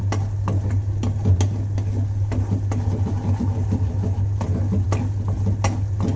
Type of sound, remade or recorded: recorded